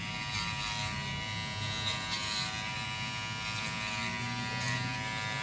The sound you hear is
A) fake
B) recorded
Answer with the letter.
B